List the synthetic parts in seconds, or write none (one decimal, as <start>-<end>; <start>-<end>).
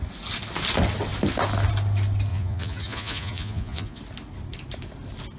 2.3-4.0